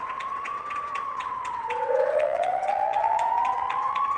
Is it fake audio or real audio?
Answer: fake